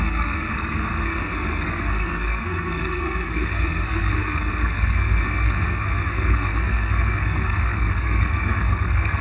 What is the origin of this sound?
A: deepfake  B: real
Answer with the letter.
A